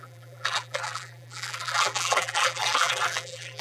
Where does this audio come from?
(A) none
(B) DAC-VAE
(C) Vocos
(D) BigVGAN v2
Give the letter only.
D